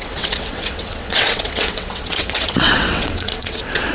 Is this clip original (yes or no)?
no